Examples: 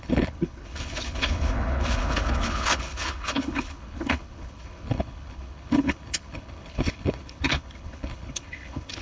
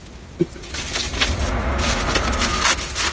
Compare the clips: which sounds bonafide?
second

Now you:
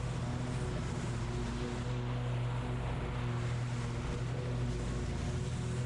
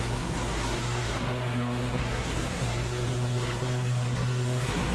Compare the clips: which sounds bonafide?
first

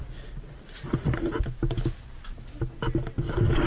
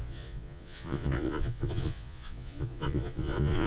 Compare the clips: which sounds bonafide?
first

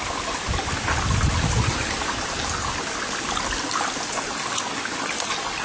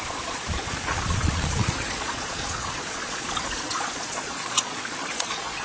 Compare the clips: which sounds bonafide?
first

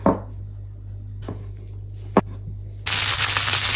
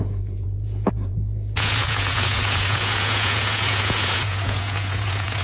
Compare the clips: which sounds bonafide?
first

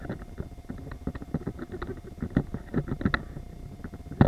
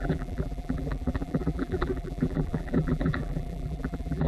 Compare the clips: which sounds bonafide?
first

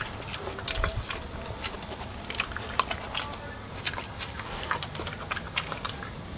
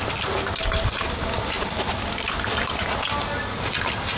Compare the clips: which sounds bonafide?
second